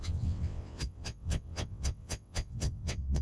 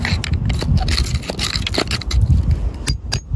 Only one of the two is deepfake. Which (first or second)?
first